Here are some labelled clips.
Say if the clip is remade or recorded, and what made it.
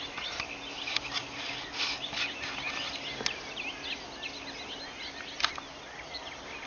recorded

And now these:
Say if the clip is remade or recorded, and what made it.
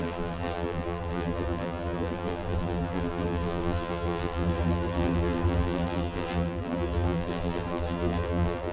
remade, vocoder, BigVGAN v2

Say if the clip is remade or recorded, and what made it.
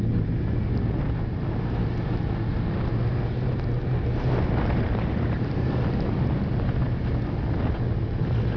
recorded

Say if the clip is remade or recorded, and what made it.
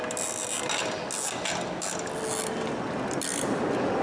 recorded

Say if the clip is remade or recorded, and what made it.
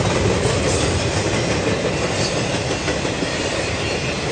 recorded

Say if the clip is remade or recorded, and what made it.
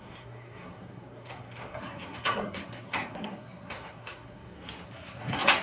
remade, codec, SNAC